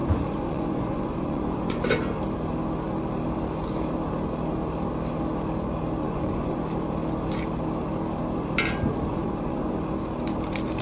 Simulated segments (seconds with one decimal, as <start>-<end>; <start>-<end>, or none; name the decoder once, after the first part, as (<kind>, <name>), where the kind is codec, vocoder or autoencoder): 0.0-1.8 (vocoder, Vocos); 6.0-6.6; 9.1-9.7